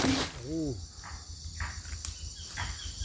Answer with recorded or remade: recorded